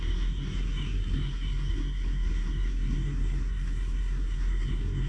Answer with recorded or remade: remade